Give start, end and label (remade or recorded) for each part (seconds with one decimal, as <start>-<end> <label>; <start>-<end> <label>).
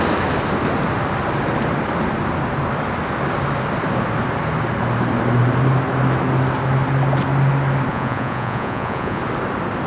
0.0-7.9 recorded; 7.9-9.2 remade; 9.2-9.9 recorded